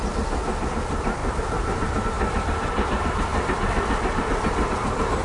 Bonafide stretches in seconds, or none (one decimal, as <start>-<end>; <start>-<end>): 0.0-5.2